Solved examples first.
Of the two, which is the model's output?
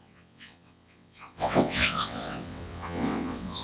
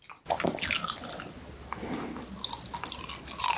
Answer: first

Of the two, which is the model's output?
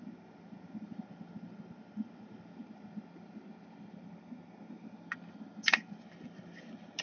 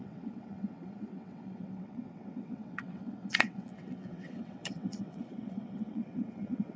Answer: second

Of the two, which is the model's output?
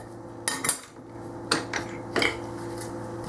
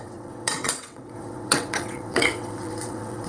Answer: second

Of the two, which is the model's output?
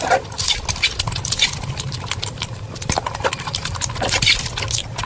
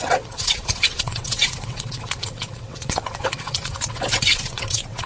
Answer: second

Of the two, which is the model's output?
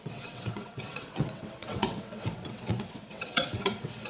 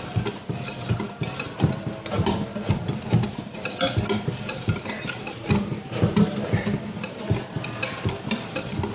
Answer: first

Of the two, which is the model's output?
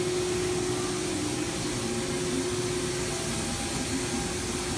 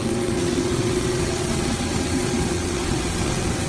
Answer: second